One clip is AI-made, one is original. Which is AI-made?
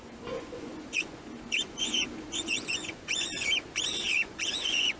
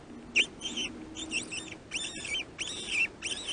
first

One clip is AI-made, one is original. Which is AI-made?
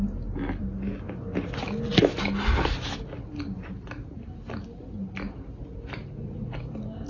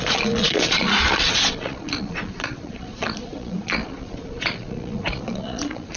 second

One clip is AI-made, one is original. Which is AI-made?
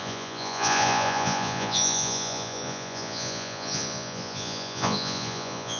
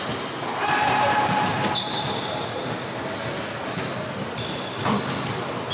first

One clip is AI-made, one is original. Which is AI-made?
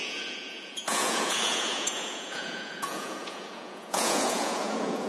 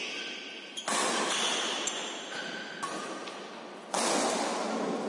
first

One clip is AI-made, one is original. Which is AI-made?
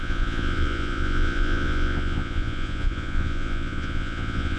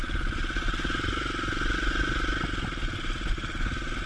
first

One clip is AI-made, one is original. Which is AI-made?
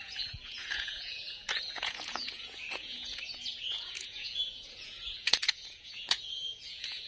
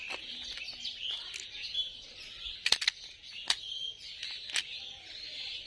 first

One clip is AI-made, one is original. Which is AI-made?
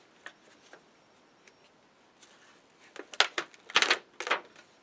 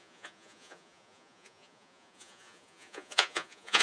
second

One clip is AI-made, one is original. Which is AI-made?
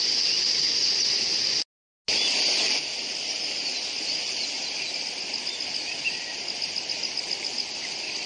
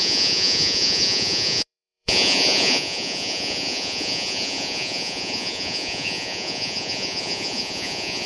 second